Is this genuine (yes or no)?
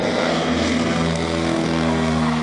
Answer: no